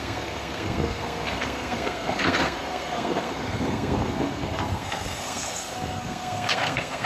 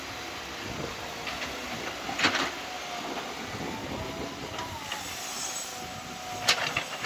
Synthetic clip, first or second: first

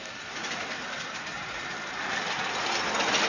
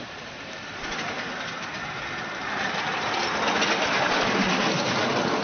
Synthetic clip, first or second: second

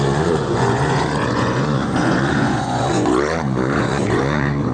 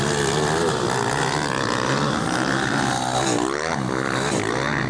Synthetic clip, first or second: first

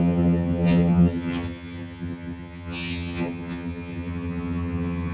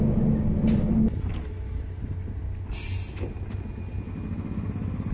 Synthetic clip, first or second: first